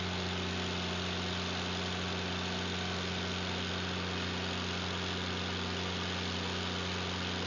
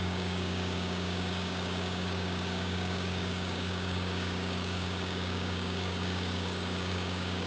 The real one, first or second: first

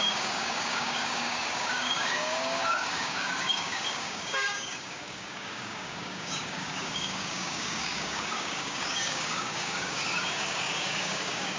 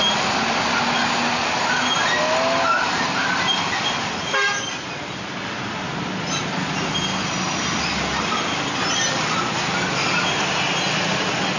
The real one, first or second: second